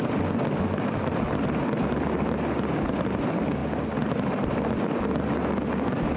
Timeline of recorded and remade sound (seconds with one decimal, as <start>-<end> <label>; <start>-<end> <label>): 0.0-3.6 recorded; 3.6-4.7 remade; 4.7-6.2 recorded